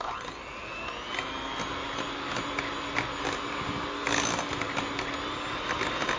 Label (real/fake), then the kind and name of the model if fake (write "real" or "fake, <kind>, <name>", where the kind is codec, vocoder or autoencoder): real